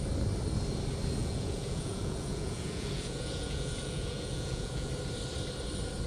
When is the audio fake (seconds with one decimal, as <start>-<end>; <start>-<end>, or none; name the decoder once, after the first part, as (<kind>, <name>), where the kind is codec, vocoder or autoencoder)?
1.2-4.9 (vocoder, Vocos)